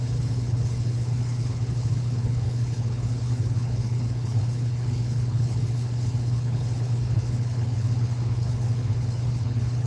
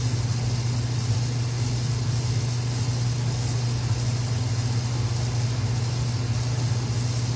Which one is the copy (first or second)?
first